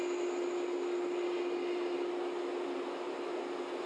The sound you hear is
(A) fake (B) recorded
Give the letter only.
B